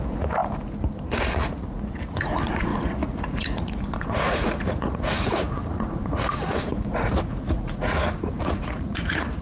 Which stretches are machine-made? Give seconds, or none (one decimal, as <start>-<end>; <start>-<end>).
0.0-0.4; 1.2-9.4